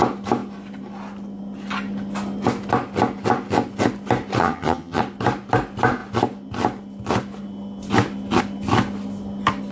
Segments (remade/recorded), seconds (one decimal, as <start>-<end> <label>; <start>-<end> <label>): 0.0-4.4 recorded; 4.4-5.0 remade; 5.0-9.7 recorded